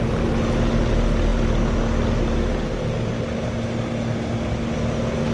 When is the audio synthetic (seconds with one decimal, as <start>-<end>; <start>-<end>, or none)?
none